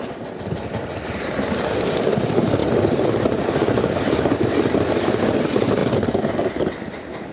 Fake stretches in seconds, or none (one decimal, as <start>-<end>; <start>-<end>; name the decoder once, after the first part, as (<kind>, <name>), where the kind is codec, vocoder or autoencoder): none